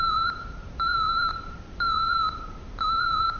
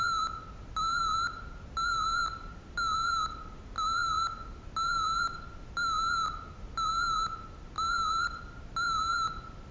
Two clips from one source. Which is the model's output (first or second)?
first